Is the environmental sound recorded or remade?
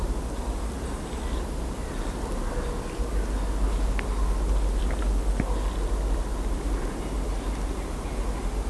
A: recorded